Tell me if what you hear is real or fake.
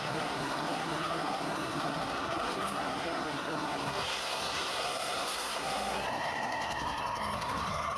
fake